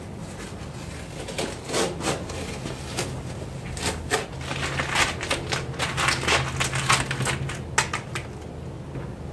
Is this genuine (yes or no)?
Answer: yes